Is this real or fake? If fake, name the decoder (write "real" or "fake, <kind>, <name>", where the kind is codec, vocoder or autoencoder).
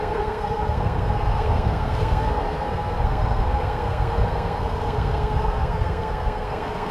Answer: fake, codec, SNAC